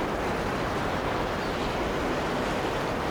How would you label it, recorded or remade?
recorded